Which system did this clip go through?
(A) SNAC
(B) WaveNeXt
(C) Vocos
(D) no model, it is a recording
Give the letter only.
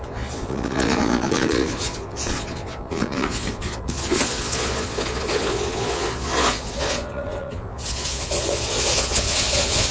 C